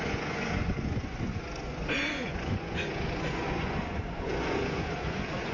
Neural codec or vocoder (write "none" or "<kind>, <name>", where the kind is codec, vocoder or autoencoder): vocoder, Vocos